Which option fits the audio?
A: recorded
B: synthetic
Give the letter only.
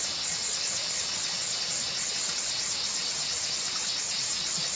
B